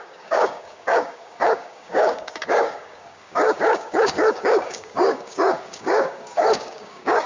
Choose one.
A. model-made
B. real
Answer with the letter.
A